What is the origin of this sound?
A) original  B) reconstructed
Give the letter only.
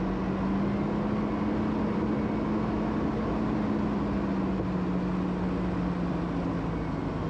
A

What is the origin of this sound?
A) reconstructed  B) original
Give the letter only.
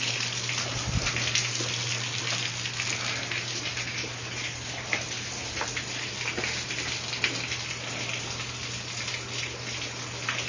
B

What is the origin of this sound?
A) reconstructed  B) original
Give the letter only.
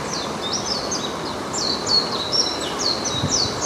B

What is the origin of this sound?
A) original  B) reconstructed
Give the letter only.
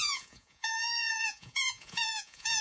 B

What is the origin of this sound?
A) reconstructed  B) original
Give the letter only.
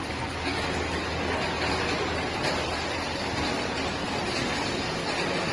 A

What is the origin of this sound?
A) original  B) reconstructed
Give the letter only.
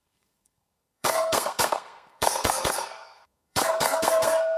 B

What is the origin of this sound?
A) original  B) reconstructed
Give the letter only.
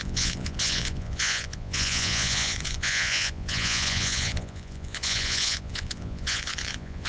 B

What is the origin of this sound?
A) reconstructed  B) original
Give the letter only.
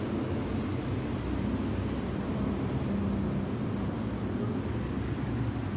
B